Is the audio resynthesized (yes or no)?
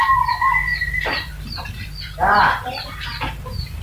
yes